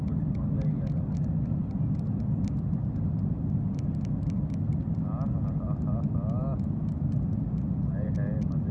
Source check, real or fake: real